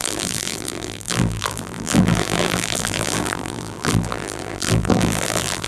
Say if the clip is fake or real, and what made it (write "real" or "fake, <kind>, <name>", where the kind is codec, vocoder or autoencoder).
fake, vocoder, BigVGAN v2